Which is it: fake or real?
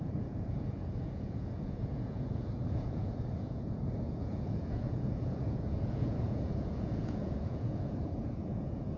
fake